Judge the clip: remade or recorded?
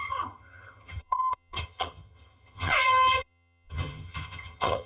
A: remade